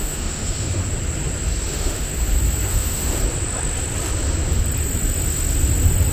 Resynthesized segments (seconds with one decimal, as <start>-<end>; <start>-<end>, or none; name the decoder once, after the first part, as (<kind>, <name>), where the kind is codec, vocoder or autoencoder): 0.0-0.8 (autoencoder, DAC-VAE); 1.7-2.1; 2.7-3.2